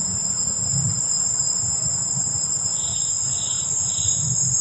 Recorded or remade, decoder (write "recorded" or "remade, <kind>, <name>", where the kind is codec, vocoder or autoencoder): remade, vocoder, BigVGAN v2